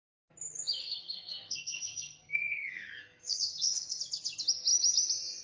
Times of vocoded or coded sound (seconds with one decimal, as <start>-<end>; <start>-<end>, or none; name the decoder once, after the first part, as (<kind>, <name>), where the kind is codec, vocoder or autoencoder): 0.8-4.0 (codec, SNAC)